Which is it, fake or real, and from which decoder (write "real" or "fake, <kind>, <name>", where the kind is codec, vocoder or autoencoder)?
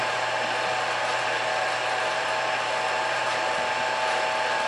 fake, vocoder, BigVGAN v2